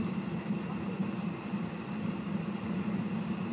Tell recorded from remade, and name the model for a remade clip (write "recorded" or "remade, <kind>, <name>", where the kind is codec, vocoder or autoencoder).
remade, vocoder, BigVGAN v2